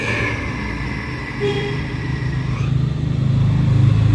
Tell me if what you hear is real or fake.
real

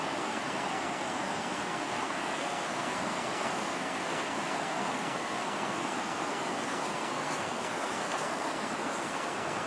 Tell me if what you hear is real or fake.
fake